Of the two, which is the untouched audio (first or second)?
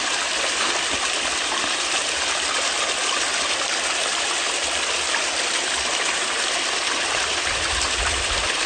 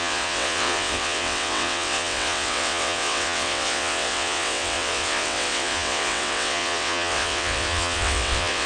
first